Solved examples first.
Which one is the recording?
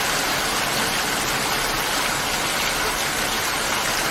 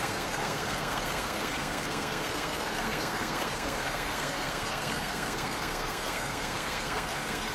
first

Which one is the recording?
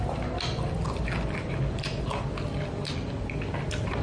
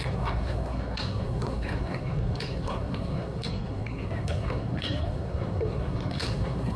first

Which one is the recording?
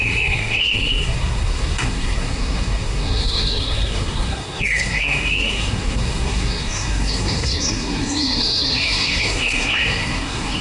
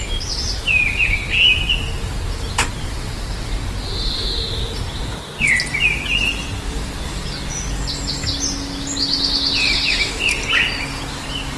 second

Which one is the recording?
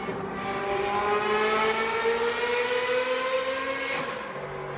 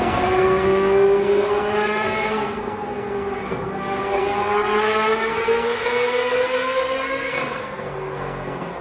first